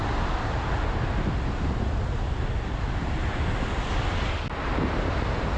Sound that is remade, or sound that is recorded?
recorded